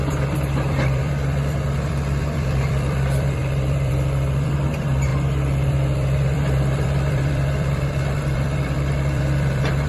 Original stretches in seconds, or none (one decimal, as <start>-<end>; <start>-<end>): 5.1-5.7